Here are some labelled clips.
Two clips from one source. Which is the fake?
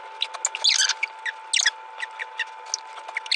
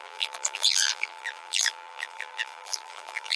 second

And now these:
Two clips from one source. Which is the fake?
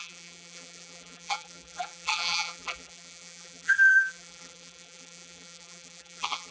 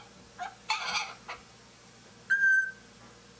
first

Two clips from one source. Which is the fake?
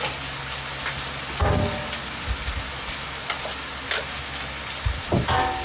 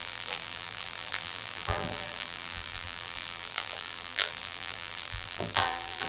second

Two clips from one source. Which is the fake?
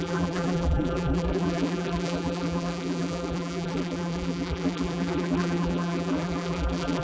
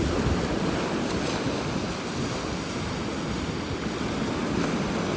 first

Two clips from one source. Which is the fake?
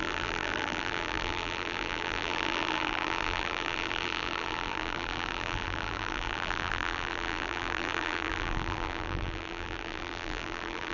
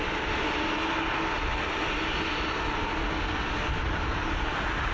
first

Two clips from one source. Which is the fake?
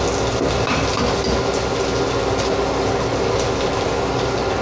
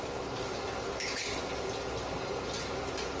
second